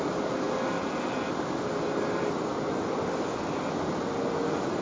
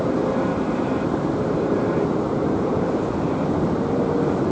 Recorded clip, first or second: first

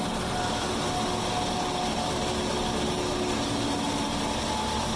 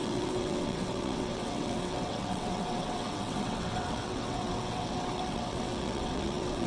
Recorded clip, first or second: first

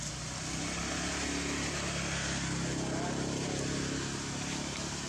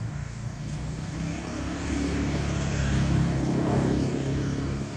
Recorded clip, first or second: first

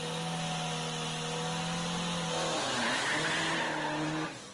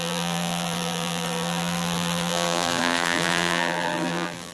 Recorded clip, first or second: first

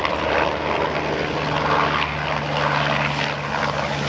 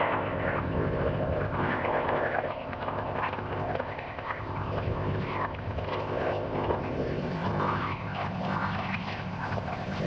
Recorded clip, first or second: first